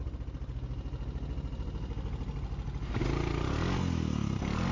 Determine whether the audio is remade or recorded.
recorded